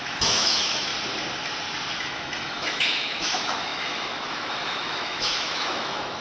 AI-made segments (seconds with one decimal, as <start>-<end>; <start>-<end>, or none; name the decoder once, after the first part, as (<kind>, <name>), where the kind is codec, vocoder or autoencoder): 0.0-0.9 (autoencoder, DAC-VAE); 2.0-6.2